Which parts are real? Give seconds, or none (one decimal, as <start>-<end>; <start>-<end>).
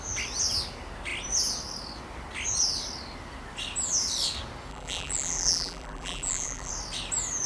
0.0-4.7; 6.7-7.5